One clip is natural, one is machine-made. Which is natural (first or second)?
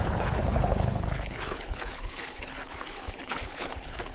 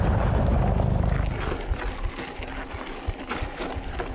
second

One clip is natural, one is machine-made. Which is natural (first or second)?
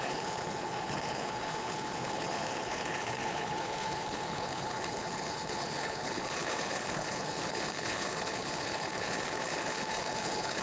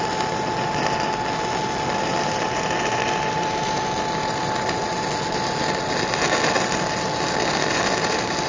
second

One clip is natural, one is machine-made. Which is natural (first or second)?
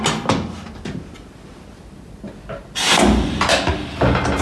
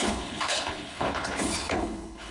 first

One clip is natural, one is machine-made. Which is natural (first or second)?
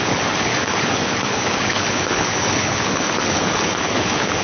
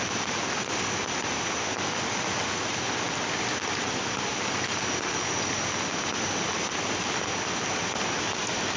second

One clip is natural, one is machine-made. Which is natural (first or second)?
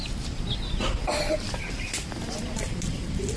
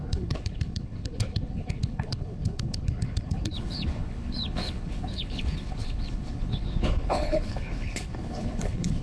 first